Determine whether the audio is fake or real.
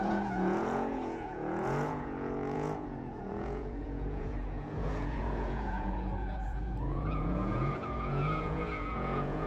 fake